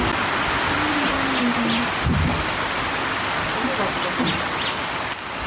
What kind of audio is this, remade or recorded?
recorded